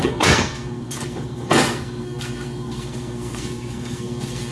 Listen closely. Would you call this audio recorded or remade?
remade